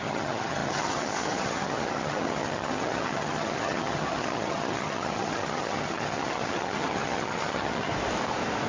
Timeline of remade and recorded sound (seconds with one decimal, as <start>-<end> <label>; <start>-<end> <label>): 0.0-7.9 remade; 7.9-8.7 recorded